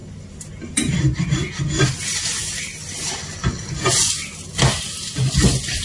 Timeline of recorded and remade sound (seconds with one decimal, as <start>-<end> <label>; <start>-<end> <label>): 0.0-5.8 recorded

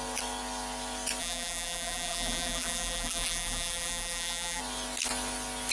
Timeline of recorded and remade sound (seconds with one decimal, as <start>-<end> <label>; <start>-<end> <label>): 0.0-1.2 recorded; 1.2-4.6 remade; 4.6-5.7 recorded

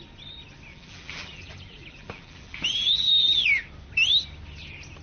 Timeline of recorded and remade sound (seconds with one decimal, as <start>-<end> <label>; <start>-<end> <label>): 0.0-0.7 recorded; 0.7-3.7 remade; 3.7-5.0 recorded

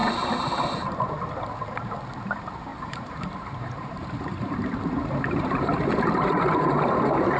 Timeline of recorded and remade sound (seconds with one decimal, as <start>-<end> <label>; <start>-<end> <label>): 0.0-1.1 remade; 1.1-2.7 recorded; 2.7-7.0 remade; 7.0-7.4 recorded

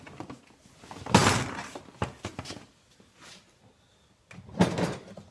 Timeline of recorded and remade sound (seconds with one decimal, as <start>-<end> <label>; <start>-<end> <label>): 0.0-5.3 recorded

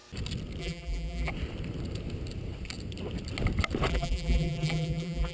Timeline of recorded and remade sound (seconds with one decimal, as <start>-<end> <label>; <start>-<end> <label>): 0.0-0.6 recorded; 0.6-1.3 remade; 1.3-3.9 recorded; 3.9-5.3 remade